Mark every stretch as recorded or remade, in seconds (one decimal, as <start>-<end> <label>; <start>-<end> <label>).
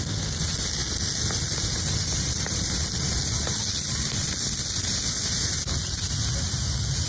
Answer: 0.0-7.1 recorded